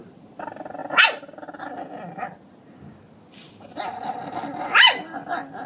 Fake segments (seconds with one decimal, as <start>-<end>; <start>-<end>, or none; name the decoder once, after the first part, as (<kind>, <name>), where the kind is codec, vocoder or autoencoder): none